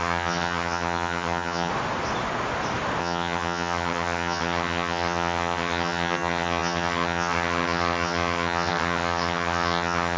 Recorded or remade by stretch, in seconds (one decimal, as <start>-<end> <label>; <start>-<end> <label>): 0.0-1.7 remade; 1.7-3.0 recorded; 3.0-10.2 remade